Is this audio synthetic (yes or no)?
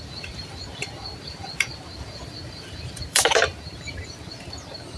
yes